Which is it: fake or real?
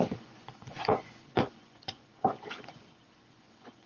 fake